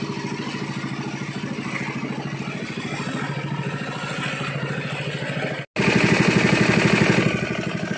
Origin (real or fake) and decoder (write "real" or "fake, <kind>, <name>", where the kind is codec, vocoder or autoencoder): real